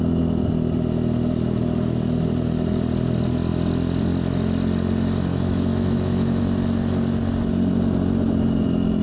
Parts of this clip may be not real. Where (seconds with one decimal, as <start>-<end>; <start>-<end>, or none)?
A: 5.3-6.4